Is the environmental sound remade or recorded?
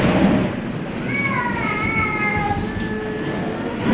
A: recorded